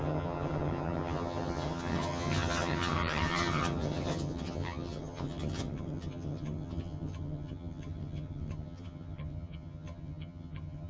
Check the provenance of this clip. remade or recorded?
remade